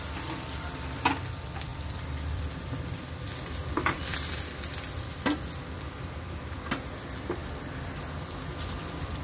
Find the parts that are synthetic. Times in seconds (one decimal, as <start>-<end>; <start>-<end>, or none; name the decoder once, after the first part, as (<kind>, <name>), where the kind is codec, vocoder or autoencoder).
1.7-4.4 (vocoder, BigVGAN v2)